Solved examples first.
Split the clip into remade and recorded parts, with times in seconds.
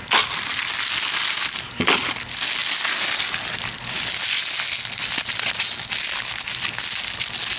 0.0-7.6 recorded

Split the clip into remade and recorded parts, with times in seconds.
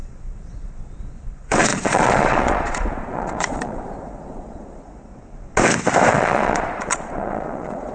0.0-5.1 remade; 5.1-6.1 recorded; 6.1-7.9 remade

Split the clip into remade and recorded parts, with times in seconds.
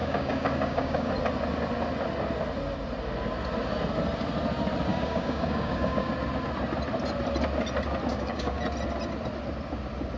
0.0-1.1 remade; 1.1-4.9 recorded; 4.9-6.1 remade; 6.1-8.1 recorded; 8.1-8.6 remade; 8.6-10.2 recorded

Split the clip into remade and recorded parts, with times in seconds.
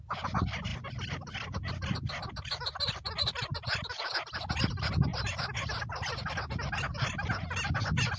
0.0-8.2 recorded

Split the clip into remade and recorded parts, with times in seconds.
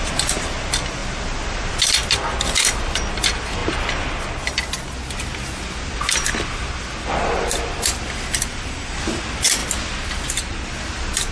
0.0-11.3 recorded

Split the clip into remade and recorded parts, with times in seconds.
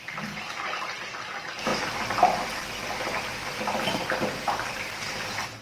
0.0-5.6 recorded